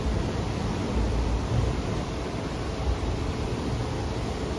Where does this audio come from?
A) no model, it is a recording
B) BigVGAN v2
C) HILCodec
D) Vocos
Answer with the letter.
B